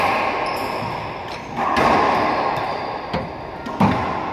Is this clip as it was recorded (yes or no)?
yes